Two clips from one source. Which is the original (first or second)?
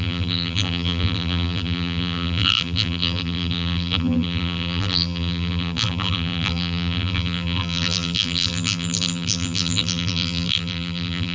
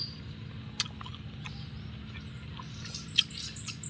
second